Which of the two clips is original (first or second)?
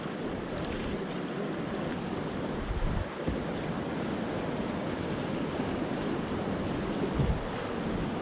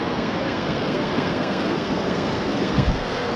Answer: first